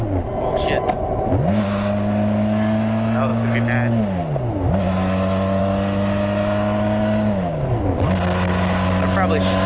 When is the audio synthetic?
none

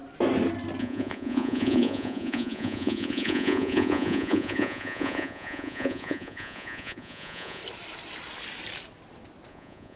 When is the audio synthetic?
0.8-7.6 (vocoder, Vocos); 9.5-10.0